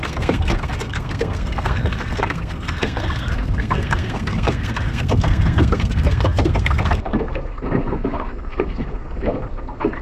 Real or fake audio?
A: fake